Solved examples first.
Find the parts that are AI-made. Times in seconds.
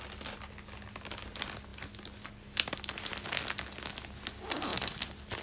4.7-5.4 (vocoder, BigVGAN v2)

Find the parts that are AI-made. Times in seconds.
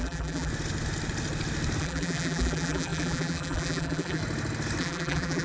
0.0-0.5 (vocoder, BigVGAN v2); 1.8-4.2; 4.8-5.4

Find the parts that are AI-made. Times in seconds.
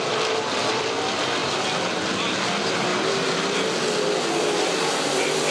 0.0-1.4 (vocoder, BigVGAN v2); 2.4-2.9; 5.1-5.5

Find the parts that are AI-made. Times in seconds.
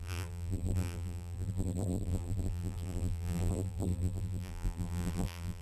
0.0-5.6 (vocoder, BigVGAN v2)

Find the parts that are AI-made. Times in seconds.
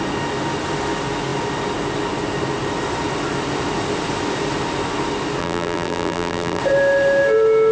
5.4-6.6 (vocoder, BigVGAN v2)